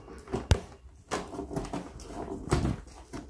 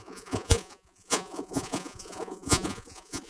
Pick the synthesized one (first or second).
second